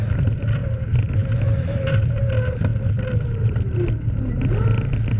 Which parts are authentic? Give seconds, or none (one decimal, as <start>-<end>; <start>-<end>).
0.0-0.6; 2.2-5.2